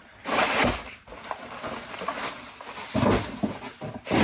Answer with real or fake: real